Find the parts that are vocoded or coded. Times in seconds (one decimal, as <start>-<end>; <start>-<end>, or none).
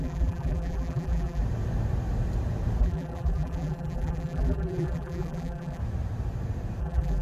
0.0-1.4; 2.8-5.8; 6.8-7.2